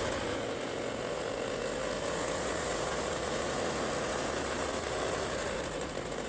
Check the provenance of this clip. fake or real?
fake